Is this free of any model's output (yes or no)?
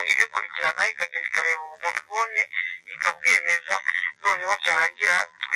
no